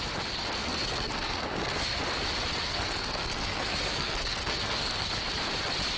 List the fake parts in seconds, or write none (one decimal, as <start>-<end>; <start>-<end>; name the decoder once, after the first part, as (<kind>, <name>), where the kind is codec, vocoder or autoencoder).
0.6-2.0 (codec, SNAC); 2.6-5.1